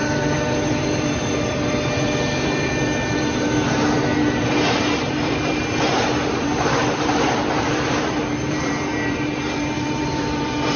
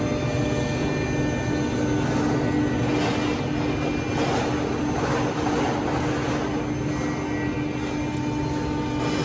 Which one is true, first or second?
second